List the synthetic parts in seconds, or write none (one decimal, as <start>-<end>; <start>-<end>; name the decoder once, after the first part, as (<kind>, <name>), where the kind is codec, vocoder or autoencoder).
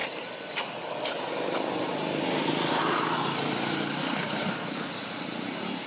4.0-4.9 (codec, HILCodec)